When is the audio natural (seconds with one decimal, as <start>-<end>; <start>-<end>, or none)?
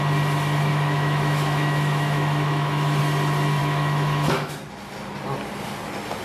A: 0.0-0.7; 3.0-3.6; 4.6-6.2